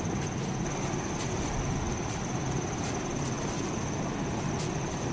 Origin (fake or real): real